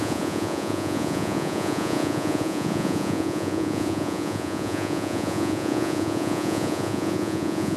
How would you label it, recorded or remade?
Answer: remade